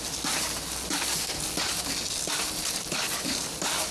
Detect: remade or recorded recorded